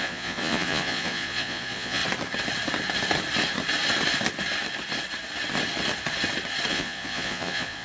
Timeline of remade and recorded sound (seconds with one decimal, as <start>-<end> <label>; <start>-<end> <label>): 0.0-2.0 remade; 2.0-6.7 recorded; 6.7-7.8 remade